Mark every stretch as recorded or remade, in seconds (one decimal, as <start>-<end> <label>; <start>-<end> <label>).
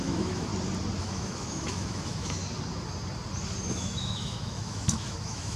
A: 0.0-0.5 remade; 0.5-1.0 recorded; 1.0-2.4 remade; 2.4-3.6 recorded; 3.6-5.6 remade